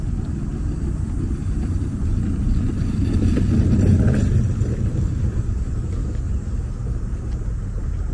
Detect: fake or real real